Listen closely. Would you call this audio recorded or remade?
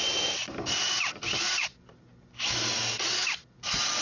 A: recorded